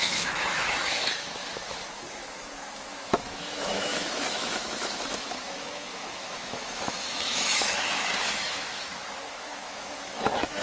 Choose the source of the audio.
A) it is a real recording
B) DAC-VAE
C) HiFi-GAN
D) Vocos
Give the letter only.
B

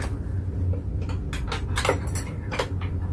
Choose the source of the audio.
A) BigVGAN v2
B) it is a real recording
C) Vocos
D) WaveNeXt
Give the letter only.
B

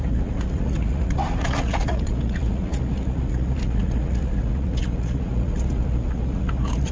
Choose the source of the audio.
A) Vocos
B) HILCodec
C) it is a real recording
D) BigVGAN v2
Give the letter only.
A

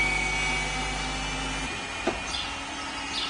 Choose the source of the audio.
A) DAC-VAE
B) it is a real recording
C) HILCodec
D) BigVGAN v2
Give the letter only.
B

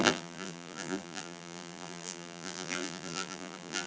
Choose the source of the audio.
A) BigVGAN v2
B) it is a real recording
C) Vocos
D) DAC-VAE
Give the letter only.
A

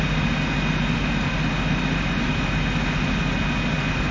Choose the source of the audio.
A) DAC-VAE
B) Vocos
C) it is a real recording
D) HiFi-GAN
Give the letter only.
C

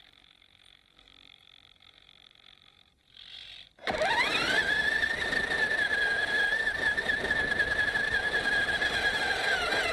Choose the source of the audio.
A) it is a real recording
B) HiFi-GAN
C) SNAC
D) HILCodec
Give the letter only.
A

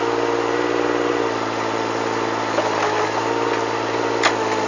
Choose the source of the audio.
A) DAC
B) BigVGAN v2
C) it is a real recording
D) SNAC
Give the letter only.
C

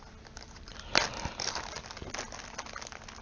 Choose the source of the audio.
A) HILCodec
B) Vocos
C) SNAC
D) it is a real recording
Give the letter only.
D